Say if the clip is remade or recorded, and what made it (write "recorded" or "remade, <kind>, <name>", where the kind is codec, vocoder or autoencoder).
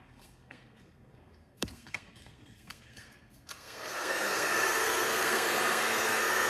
remade, codec, SNAC